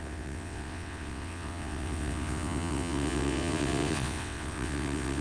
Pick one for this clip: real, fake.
fake